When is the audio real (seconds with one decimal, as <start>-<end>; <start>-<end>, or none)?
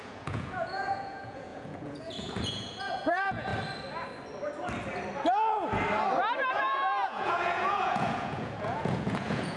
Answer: 3.5-6.5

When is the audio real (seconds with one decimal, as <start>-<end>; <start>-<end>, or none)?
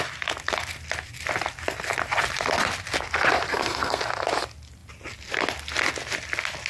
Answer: 0.0-3.5; 4.0-6.7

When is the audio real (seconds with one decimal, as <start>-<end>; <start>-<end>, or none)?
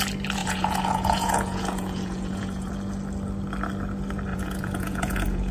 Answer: 0.0-0.4; 2.7-4.3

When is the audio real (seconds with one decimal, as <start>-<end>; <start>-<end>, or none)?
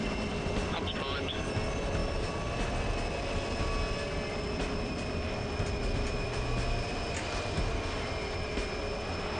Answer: 0.0-9.4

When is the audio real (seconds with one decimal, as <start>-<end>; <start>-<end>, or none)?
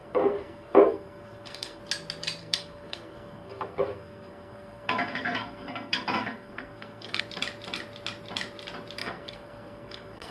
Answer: 1.8-2.4; 7.2-9.0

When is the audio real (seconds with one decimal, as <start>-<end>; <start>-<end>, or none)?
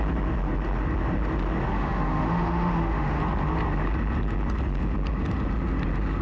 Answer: 0.0-1.7; 3.2-6.2